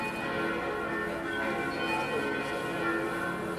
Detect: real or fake real